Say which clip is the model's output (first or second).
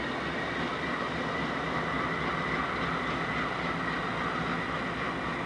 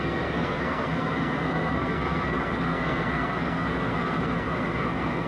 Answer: second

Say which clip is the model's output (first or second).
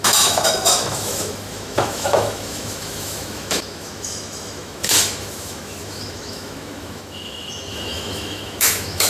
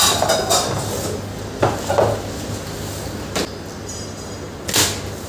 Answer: first